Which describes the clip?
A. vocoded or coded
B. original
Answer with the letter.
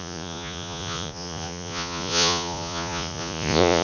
A